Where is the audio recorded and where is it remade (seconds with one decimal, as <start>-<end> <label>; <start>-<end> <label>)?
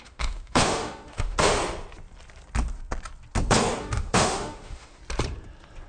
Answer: 0.0-1.6 remade; 1.6-3.8 recorded; 3.8-5.0 remade; 5.0-5.9 recorded